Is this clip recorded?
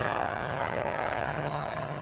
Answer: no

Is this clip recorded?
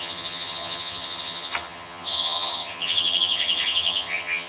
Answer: no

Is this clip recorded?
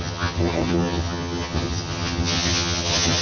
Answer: no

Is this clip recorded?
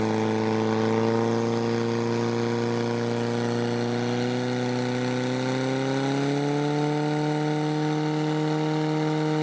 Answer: yes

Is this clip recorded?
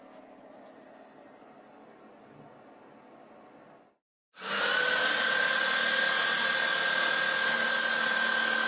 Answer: yes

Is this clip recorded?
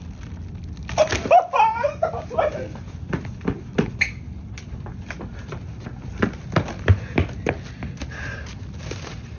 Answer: yes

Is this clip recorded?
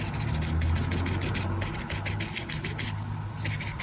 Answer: yes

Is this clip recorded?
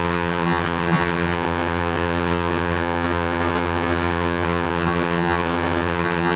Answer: no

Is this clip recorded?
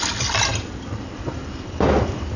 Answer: yes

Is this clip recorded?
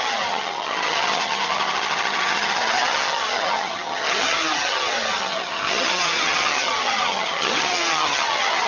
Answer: no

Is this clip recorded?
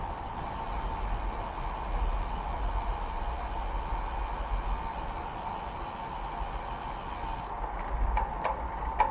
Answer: yes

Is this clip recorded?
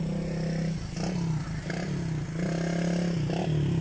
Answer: yes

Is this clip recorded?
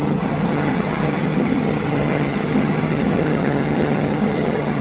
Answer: no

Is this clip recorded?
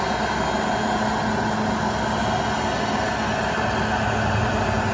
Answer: yes